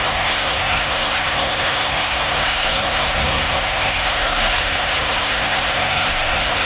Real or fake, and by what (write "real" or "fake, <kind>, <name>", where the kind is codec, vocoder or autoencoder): fake, codec, SNAC